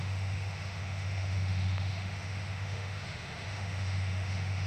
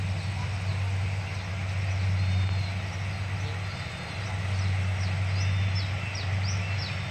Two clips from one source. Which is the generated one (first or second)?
first